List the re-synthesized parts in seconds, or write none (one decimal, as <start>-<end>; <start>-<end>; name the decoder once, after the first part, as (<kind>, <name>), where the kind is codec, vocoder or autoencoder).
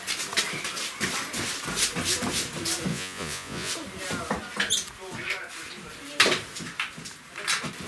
2.9-3.7 (vocoder, Vocos)